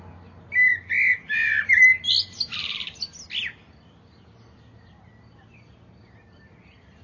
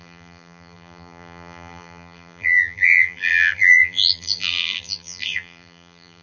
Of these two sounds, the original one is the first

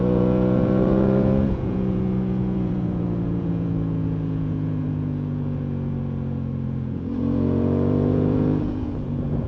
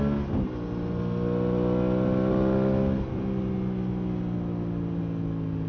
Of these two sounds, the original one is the second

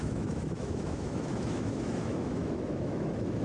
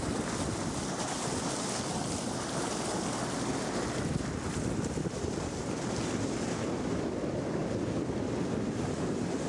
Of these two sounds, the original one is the second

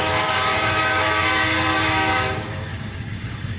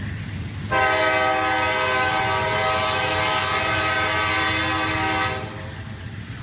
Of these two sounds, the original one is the second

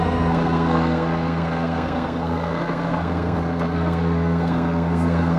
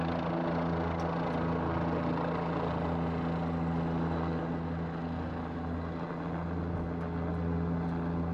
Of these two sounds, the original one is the second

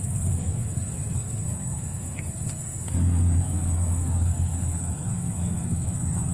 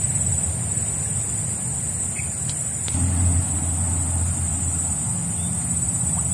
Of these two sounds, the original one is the second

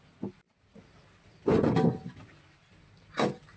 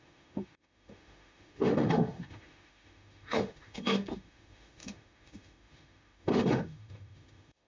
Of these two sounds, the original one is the first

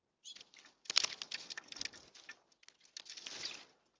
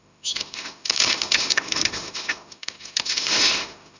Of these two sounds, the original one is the first